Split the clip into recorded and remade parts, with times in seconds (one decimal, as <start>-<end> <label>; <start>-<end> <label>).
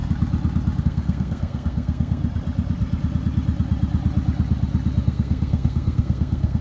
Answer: 0.0-0.8 recorded; 0.8-2.2 remade; 2.2-5.0 recorded; 5.0-6.6 remade